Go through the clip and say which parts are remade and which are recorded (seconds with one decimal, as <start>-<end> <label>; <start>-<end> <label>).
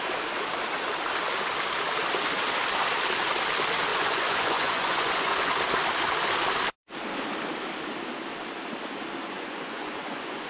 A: 0.0-3.9 recorded; 3.9-5.5 remade; 5.5-9.2 recorded; 9.2-10.5 remade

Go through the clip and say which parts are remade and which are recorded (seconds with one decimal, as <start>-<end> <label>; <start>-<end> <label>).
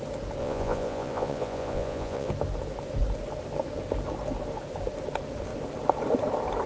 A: 0.0-0.4 recorded; 0.4-2.3 remade; 2.3-6.7 recorded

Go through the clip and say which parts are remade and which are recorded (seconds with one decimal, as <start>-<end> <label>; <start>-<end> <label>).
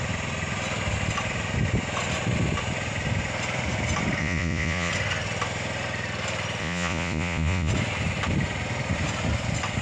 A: 0.0-4.2 recorded; 4.2-4.9 remade; 4.9-6.6 recorded; 6.6-7.7 remade; 7.7-9.8 recorded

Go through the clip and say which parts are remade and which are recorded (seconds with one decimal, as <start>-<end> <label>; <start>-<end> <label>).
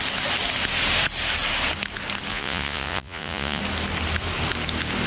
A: 0.0-2.3 recorded; 2.3-3.6 remade; 3.6-5.1 recorded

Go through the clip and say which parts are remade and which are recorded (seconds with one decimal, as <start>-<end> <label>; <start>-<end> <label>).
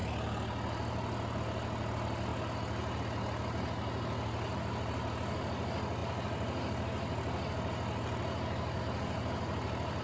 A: 0.0-10.0 recorded